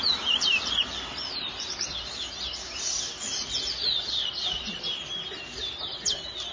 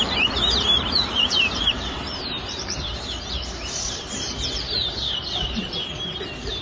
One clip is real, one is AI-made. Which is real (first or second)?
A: first